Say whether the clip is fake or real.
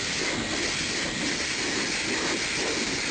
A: real